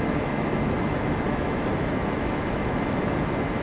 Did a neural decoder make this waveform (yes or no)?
yes